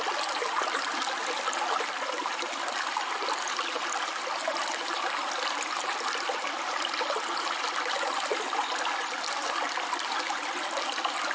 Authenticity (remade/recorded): recorded